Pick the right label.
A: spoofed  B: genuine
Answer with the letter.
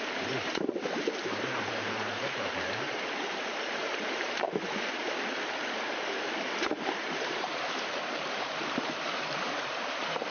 A